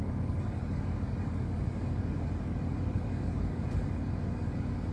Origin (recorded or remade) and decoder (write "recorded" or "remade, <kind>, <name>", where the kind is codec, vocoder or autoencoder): remade, codec, DAC